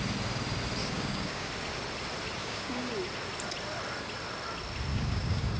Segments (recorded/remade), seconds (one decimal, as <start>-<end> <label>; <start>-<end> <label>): 0.0-0.8 recorded; 0.8-1.5 remade; 1.5-2.4 recorded; 2.4-2.9 remade; 2.9-4.9 recorded; 4.9-5.6 remade